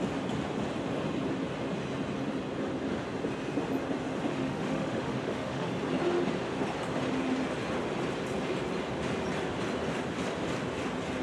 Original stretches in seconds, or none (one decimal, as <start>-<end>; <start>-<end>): 0.0-4.3; 5.7-11.2